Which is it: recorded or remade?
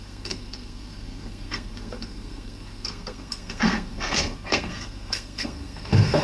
remade